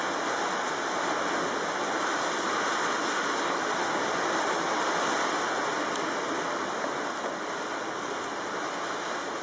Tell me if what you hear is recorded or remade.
recorded